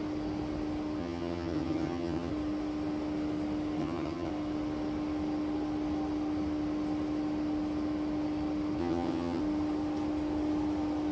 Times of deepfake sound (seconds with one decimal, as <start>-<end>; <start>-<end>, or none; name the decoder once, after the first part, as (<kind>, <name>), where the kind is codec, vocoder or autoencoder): 1.0-2.3 (vocoder, HiFi-GAN); 3.8-4.3; 8.8-9.4